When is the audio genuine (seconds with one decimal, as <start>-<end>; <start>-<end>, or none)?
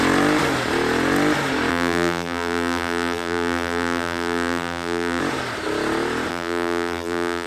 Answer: 0.0-1.7; 5.2-6.3